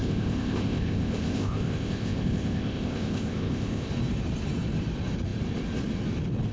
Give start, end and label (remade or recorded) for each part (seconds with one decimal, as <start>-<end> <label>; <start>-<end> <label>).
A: 0.0-3.9 remade; 3.9-6.5 recorded